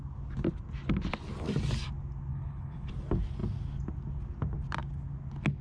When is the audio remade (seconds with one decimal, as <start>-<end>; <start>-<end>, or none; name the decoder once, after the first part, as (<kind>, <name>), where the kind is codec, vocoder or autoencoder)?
2.3-2.9 (codec, HILCodec)